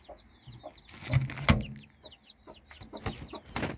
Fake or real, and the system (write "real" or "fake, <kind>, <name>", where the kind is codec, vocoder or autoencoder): real